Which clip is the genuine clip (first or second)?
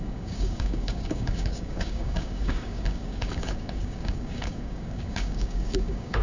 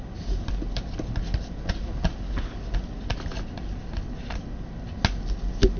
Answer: second